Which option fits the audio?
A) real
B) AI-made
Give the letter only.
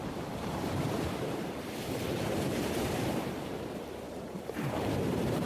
B